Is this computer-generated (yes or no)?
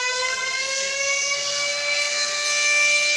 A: yes